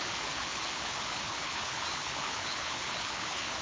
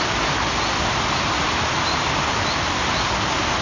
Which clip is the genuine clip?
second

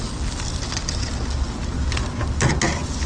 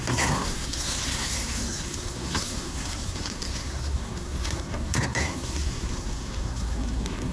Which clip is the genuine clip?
first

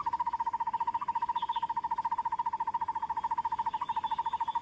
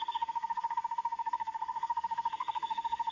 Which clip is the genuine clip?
first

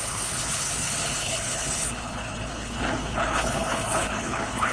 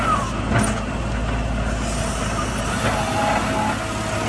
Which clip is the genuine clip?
second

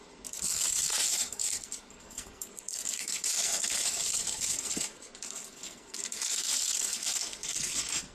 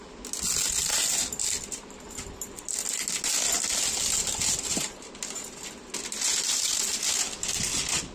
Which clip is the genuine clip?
second